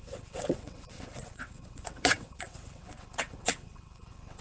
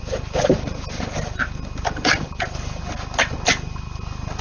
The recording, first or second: second